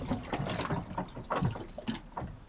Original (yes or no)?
yes